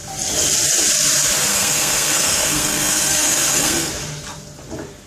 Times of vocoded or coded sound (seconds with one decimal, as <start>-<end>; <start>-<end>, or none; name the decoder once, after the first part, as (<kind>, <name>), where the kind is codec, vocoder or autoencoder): 1.5-3.9 (codec, SNAC)